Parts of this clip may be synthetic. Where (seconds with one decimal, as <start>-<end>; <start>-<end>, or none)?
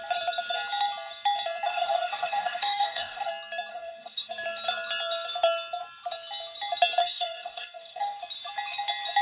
1.7-3.3; 3.7-4.3; 7.0-8.2